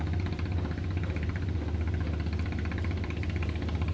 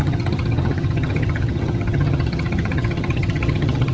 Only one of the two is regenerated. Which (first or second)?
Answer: second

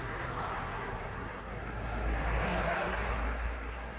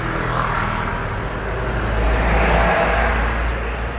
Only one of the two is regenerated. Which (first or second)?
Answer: first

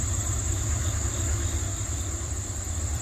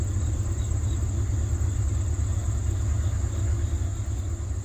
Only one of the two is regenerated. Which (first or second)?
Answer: first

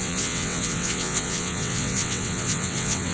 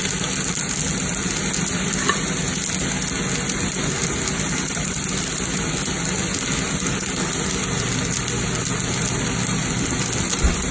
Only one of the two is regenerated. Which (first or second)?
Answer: first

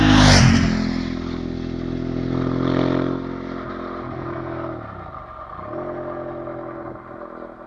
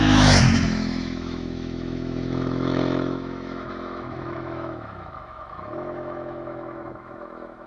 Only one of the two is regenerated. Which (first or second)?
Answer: second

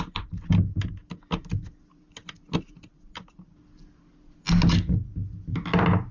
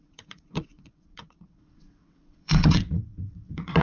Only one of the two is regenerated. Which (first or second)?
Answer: second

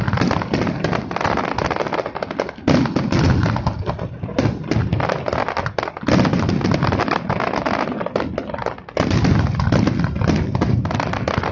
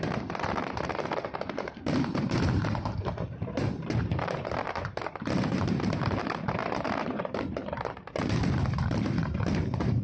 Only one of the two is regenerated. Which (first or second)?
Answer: second